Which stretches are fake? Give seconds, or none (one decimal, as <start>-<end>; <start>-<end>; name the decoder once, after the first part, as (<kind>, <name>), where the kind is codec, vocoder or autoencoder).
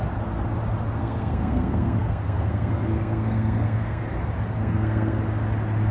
0.9-4.0 (codec, SNAC); 4.6-5.2